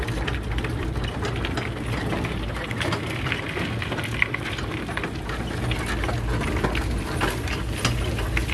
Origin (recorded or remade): recorded